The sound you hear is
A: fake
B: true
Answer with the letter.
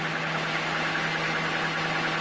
B